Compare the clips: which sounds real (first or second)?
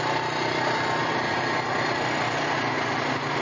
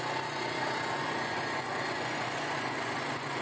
first